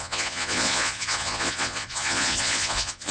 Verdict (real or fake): fake